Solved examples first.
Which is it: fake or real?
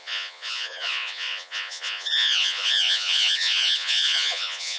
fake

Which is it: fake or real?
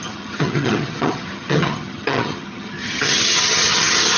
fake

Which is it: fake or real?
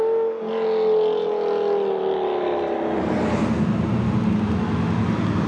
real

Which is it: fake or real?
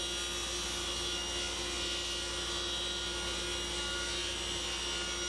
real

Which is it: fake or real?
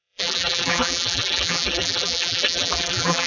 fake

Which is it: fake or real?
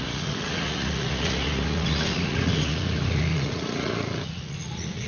fake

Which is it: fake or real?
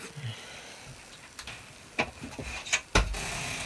real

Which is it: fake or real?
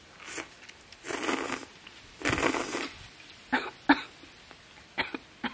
real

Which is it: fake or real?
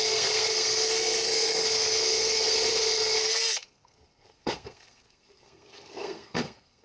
fake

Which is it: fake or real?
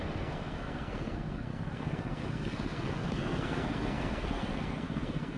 fake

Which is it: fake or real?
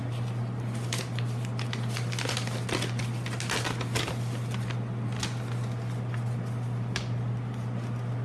real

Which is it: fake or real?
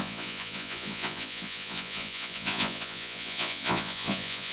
fake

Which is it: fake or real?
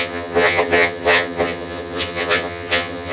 fake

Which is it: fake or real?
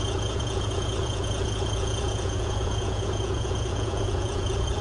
fake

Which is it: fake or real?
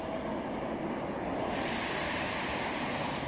real